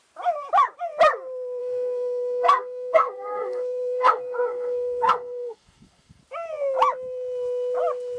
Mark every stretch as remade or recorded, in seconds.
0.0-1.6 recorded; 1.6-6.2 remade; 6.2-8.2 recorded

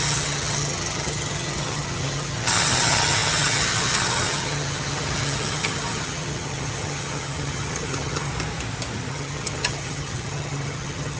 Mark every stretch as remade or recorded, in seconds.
0.0-8.3 remade; 8.3-9.1 recorded; 9.1-11.2 remade

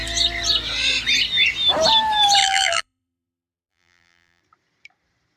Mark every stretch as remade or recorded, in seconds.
0.0-2.4 recorded; 2.4-4.4 remade; 4.4-5.4 recorded

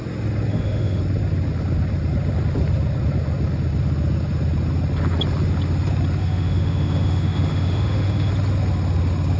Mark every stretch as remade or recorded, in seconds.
0.0-0.5 recorded; 0.5-1.0 remade; 1.0-6.2 recorded; 6.2-8.3 remade; 8.3-9.4 recorded

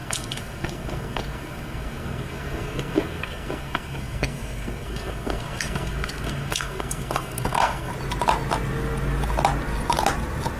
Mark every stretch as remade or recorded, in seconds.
0.0-7.9 remade; 7.9-10.6 recorded

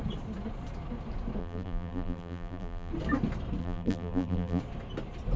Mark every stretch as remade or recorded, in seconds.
0.0-1.4 recorded; 1.4-2.9 remade; 2.9-3.6 recorded; 3.6-4.6 remade; 4.6-5.4 recorded